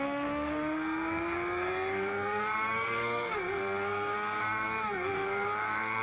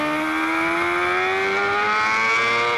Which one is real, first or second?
second